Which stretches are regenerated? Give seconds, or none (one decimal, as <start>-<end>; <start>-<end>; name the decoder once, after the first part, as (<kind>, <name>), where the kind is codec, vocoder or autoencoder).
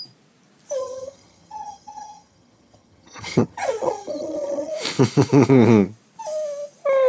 0.8-4.7 (vocoder, HiFi-GAN)